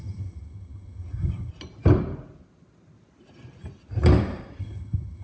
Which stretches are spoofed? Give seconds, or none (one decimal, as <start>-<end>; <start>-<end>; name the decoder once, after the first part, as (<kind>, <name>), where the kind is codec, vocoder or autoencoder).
0.0-1.5 (vocoder, HiFi-GAN); 4.6-5.2